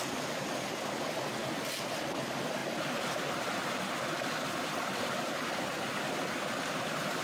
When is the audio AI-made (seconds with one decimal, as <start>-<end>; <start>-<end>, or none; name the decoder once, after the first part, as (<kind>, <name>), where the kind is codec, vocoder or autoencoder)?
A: none